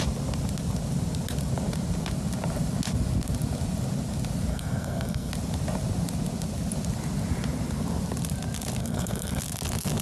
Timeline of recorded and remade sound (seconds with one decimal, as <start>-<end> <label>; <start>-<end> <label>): 0.0-4.5 recorded; 4.5-5.3 remade; 5.3-8.8 recorded; 8.8-9.4 remade; 9.4-10.0 recorded